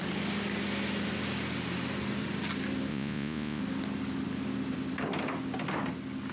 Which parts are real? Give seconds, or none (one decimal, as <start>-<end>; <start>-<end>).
0.0-2.9; 3.6-6.3